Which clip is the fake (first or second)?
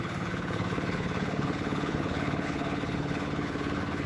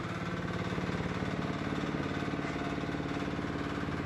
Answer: first